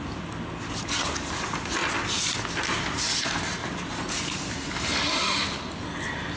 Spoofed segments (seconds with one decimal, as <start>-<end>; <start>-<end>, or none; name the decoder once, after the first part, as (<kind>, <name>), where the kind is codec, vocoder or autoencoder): 3.6-4.9 (vocoder, BigVGAN v2)